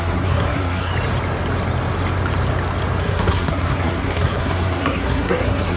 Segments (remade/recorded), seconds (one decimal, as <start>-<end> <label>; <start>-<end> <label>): 0.0-0.9 remade; 0.9-3.0 recorded; 3.0-5.8 remade